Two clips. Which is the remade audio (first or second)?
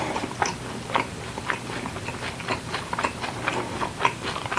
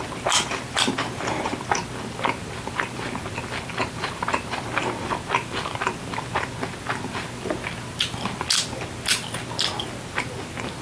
first